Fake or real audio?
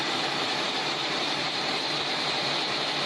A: fake